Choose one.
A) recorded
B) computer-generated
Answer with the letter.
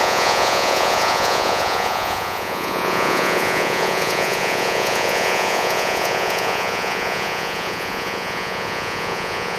B